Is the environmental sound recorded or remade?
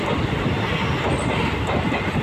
recorded